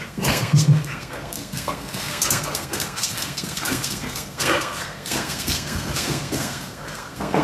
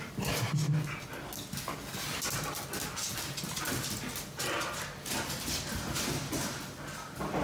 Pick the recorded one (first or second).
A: second